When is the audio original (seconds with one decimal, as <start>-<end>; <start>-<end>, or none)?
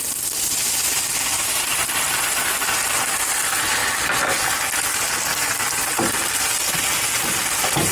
0.0-7.9